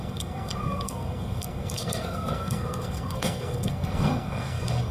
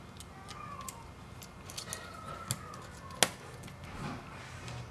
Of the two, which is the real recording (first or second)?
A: second